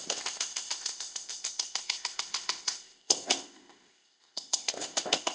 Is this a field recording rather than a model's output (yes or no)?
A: no